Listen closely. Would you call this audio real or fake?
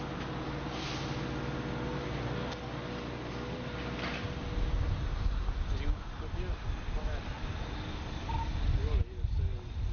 real